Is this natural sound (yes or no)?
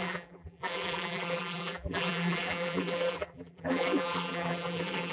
no